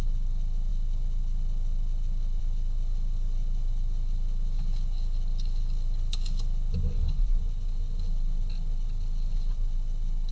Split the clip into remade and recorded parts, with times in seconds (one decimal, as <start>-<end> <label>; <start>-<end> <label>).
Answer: 0.0-10.3 recorded